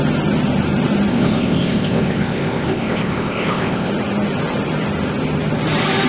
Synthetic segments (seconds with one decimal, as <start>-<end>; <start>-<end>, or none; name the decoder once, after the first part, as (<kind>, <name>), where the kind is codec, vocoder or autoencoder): 1.1-3.9 (codec, ZipCodec)